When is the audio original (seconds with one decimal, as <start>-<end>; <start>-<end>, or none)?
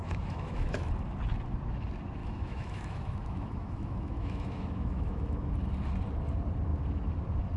0.9-2.2; 5.5-7.6